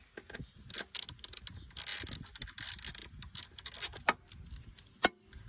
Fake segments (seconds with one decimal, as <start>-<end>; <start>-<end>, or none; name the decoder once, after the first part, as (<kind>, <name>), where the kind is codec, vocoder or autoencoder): none